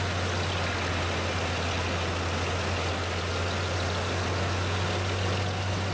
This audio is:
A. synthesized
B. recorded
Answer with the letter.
B